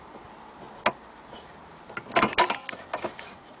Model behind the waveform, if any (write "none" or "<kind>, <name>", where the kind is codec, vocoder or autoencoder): none